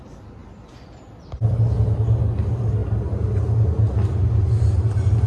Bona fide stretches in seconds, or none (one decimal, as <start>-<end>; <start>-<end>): 0.0-5.3